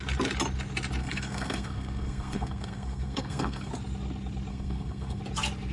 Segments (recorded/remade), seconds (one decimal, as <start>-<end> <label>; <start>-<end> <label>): 0.0-1.0 recorded; 1.0-3.7 remade; 3.7-4.5 recorded; 4.5-5.2 remade; 5.2-5.7 recorded